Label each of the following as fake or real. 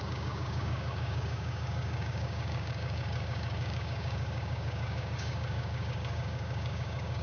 fake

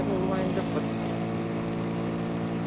real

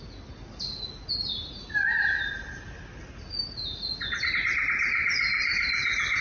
real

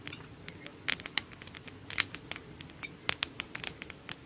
real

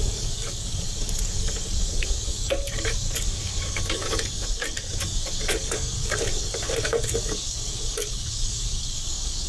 fake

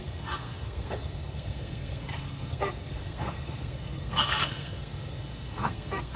fake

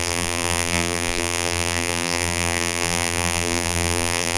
fake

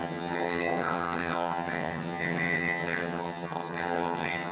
fake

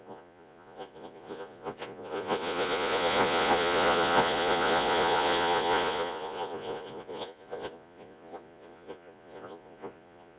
fake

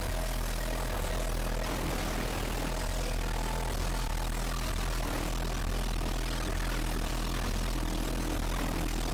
real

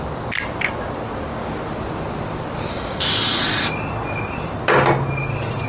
real